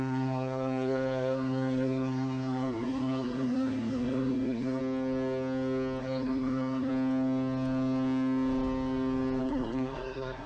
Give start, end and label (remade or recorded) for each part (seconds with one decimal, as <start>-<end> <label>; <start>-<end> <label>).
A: 0.0-4.8 remade; 4.8-6.0 recorded; 6.0-6.9 remade; 6.9-9.4 recorded; 9.4-10.5 remade